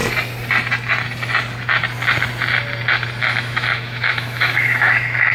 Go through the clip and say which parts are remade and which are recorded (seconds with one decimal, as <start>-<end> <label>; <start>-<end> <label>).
0.0-3.2 recorded; 3.2-5.3 remade